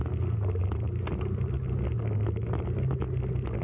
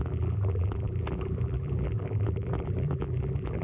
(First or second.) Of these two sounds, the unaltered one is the first